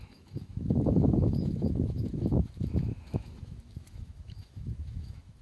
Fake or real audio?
fake